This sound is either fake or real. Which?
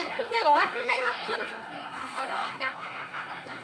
fake